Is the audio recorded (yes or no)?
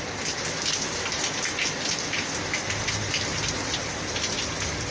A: yes